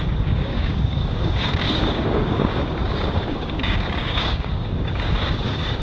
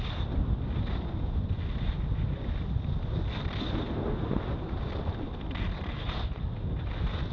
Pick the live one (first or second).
second